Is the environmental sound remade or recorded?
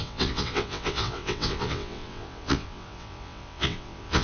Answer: remade